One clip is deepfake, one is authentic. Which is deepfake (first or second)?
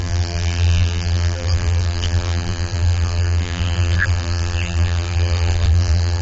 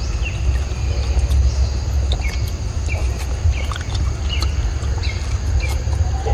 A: first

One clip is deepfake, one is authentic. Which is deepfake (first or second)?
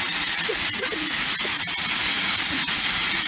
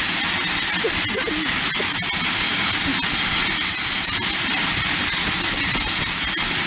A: first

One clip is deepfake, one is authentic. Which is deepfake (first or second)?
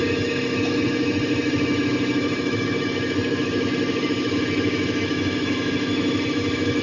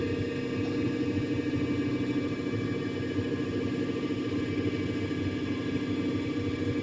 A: first